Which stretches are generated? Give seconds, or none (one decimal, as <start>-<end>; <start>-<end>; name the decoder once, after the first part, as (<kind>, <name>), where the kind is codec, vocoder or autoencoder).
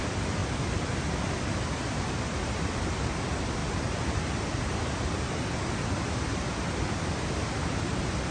none